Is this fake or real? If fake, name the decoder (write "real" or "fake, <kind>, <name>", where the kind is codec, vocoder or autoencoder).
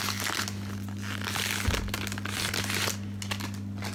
real